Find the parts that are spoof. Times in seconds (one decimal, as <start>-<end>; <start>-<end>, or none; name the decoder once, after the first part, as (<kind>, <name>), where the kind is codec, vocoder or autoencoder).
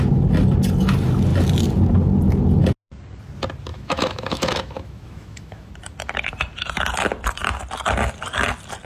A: 3.7-5.7 (autoencoder, DAC-VAE)